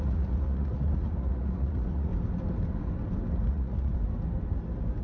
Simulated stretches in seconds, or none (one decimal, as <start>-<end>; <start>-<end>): 0.0-2.1; 3.5-3.9